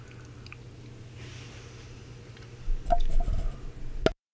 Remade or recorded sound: recorded